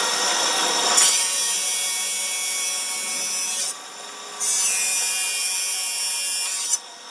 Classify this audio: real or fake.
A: real